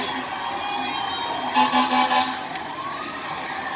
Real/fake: real